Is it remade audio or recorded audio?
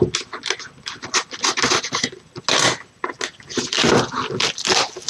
recorded